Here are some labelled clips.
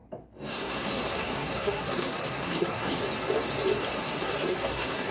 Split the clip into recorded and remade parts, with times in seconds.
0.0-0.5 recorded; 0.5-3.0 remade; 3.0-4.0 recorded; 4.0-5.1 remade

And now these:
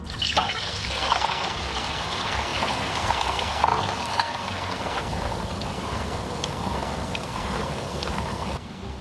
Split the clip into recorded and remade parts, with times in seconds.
0.0-9.0 remade

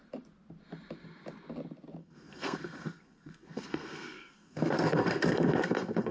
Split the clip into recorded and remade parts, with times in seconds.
0.0-2.0 recorded; 2.0-6.1 remade